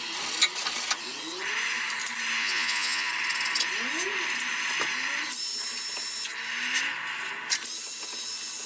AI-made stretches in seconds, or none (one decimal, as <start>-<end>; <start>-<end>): 2.4-3.1